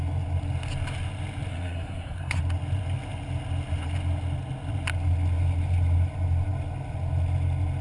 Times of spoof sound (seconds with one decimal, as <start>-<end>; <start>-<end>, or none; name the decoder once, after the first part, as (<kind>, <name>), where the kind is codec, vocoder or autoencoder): 1.5-2.4 (codec, SNAC)